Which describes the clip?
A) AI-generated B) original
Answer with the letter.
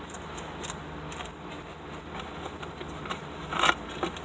B